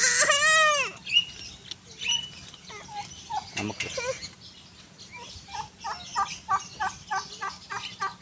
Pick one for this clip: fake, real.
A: real